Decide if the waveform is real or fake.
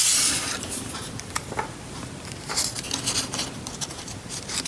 fake